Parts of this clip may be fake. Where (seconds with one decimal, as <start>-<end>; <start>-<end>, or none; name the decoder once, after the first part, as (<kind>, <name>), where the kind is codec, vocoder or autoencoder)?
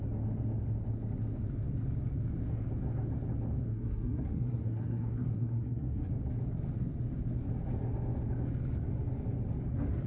3.7-6.1 (codec, SNAC)